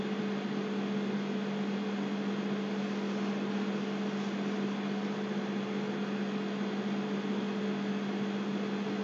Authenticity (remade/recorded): recorded